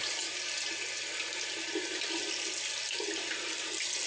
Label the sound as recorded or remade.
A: recorded